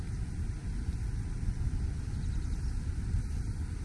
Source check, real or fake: real